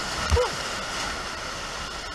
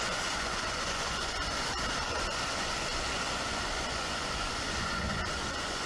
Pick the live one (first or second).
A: first